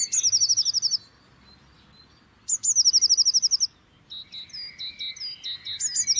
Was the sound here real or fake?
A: real